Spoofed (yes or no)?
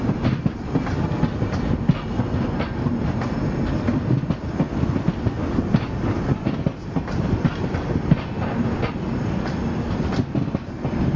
no